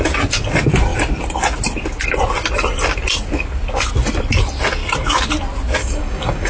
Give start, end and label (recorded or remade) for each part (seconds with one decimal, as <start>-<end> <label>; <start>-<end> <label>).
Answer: 0.0-5.8 recorded; 5.8-6.5 remade